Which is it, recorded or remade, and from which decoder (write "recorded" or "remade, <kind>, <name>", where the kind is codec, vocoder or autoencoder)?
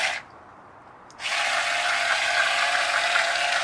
recorded